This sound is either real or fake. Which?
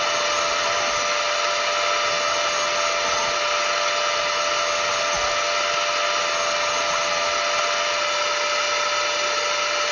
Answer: real